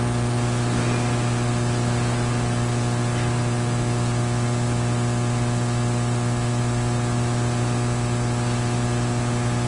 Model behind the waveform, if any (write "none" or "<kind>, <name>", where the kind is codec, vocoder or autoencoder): none